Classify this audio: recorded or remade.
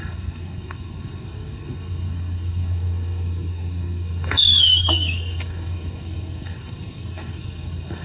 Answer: remade